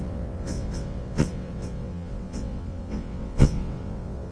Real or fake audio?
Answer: fake